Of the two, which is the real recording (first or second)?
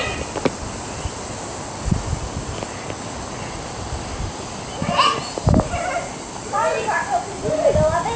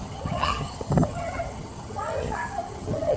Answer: first